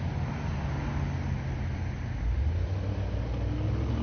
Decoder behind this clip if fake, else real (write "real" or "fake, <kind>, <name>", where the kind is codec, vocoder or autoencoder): real